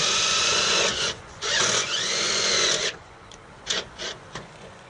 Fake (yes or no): yes